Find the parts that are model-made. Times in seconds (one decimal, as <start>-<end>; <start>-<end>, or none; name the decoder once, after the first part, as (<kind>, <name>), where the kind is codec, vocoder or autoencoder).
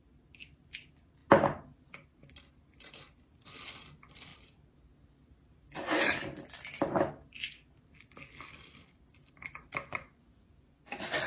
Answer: 9.8-10.9 (vocoder, Vocos)